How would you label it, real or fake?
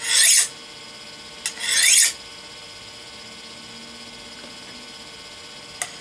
real